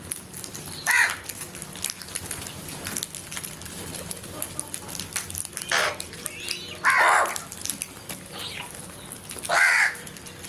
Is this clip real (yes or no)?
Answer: yes